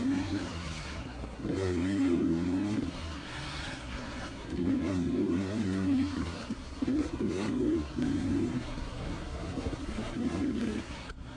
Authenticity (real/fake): fake